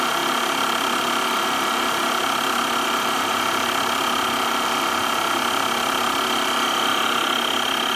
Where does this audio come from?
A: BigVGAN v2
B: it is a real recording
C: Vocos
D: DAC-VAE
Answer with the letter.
B